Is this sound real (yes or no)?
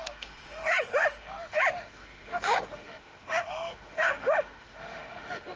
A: no